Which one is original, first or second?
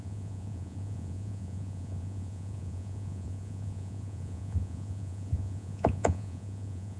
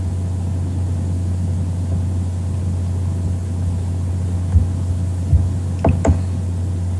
second